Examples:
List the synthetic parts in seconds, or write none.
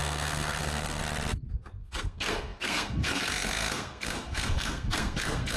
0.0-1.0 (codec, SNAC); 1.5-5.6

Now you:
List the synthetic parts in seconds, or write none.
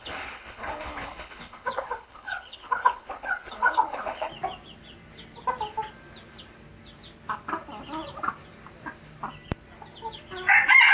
0.0-4.3 (codec, HILCodec)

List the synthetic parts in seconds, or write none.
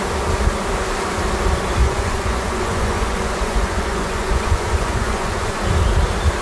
1.8-5.6 (vocoder, Vocos)